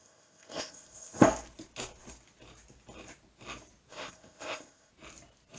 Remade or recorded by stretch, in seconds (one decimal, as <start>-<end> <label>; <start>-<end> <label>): 0.0-1.2 remade; 1.2-3.9 recorded; 3.9-4.9 remade; 4.9-5.6 recorded